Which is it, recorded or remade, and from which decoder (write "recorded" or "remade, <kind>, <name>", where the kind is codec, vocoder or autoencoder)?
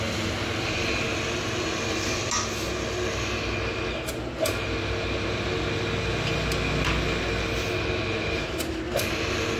recorded